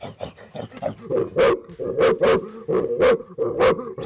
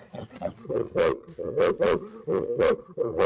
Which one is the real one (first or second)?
first